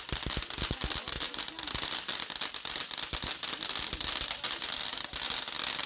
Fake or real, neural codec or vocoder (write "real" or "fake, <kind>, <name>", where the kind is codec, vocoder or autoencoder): real